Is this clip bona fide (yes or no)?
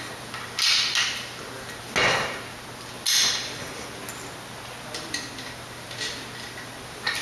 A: yes